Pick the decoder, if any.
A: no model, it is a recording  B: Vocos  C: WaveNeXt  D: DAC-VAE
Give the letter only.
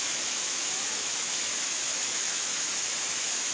D